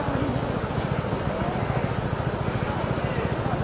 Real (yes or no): yes